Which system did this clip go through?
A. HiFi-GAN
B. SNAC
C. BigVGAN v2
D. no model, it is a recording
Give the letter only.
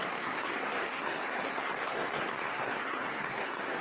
B